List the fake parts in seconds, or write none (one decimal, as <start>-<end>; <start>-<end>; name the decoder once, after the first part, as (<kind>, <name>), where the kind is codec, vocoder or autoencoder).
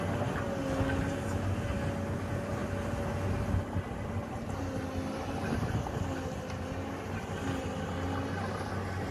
none